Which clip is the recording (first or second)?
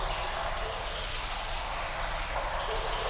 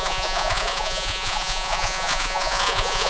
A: first